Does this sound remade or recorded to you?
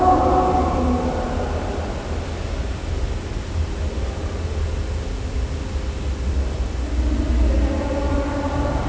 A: recorded